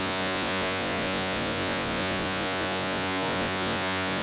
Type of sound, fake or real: fake